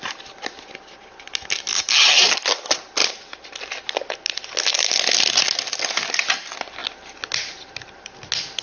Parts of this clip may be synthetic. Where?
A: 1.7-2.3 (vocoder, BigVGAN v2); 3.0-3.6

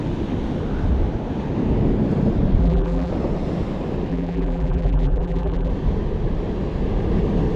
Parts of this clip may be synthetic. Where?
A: 2.6-3.1 (vocoder, BigVGAN v2); 4.1-5.7